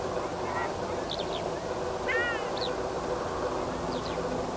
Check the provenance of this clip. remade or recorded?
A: recorded